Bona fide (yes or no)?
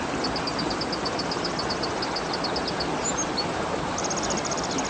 yes